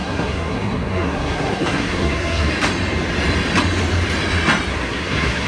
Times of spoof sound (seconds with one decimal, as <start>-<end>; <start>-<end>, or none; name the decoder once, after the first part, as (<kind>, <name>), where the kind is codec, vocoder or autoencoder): 0.0-2.5 (codec, SNAC); 4.7-5.5